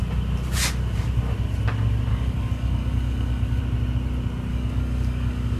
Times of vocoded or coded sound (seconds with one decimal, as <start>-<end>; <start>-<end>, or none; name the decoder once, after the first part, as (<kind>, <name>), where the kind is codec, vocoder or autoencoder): 2.1-3.6 (codec, DAC); 4.5-5.6